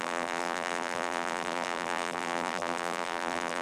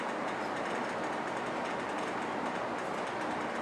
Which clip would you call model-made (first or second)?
first